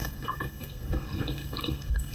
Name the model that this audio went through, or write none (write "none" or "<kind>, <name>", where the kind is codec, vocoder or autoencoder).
codec, SNAC